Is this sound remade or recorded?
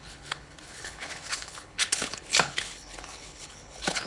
remade